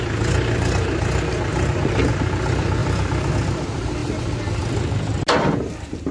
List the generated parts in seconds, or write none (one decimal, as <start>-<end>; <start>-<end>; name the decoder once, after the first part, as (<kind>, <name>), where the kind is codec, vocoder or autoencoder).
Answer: 1.5-2.1 (vocoder, BigVGAN v2); 2.8-3.3